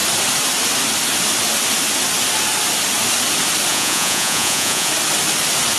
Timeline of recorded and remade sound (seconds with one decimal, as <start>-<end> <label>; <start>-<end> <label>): 0.0-3.7 recorded; 3.7-4.9 remade; 4.9-5.8 recorded